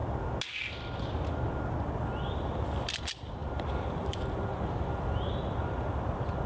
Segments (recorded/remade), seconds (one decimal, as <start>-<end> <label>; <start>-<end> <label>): 0.0-1.8 recorded; 1.8-6.5 remade

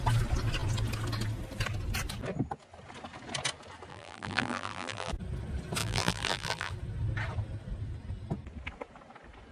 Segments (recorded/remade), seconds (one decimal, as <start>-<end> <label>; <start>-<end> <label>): 0.0-3.9 recorded; 3.9-5.1 remade; 5.1-5.8 recorded; 5.8-6.7 remade; 6.7-9.5 recorded

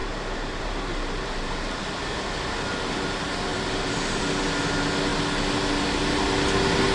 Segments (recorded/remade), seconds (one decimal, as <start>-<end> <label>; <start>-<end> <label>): 0.0-1.8 remade; 1.8-3.5 recorded; 3.5-4.2 remade; 4.2-6.9 recorded

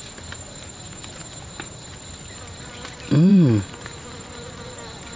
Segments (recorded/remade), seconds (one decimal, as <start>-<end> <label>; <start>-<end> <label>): 0.0-0.8 recorded; 0.8-2.0 remade; 2.0-3.3 recorded; 3.3-4.1 remade; 4.1-5.2 recorded

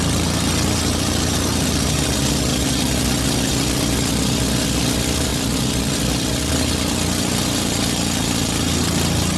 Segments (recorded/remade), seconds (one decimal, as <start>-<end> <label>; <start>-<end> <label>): 0.0-5.3 recorded; 5.3-6.5 remade; 6.5-9.4 recorded